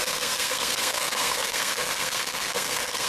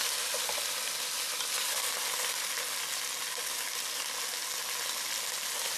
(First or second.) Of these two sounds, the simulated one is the first